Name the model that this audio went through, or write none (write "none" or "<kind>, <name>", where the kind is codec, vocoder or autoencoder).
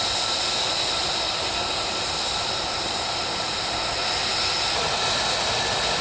none